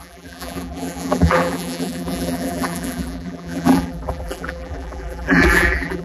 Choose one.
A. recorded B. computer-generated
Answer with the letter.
B